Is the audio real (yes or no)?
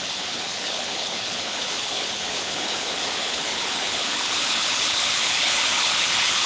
no